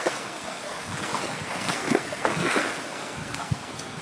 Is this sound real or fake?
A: fake